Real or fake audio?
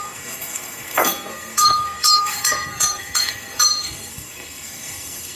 fake